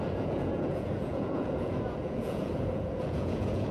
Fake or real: fake